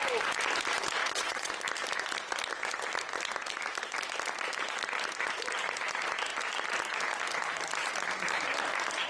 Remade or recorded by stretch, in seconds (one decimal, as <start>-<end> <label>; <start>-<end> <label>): 0.0-1.0 recorded; 1.0-1.5 remade; 1.5-9.1 recorded

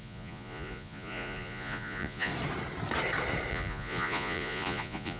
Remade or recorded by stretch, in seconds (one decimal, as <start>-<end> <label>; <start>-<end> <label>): 0.0-2.3 remade; 2.3-3.5 recorded; 3.5-5.2 remade